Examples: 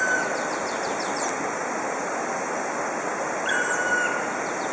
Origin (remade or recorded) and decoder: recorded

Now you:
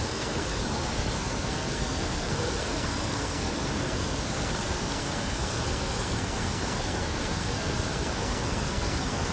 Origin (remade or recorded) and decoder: remade, codec, SNAC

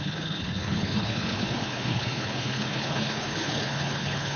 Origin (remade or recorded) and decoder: remade, codec, HILCodec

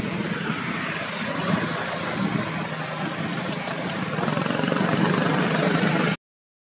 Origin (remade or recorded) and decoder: recorded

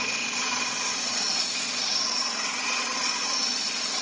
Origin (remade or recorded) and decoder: remade, vocoder, Vocos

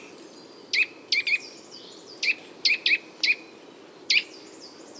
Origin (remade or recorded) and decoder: recorded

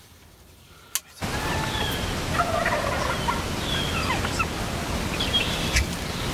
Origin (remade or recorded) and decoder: recorded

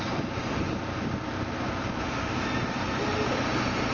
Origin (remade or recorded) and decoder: recorded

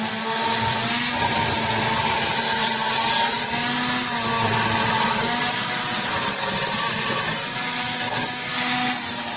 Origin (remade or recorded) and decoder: recorded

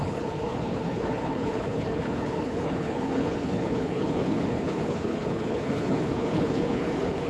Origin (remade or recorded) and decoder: remade, codec, HILCodec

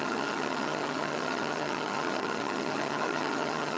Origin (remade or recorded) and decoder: remade, vocoder, HiFi-GAN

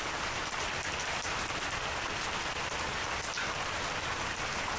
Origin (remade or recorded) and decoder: recorded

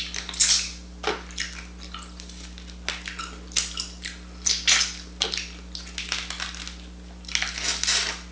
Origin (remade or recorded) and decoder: recorded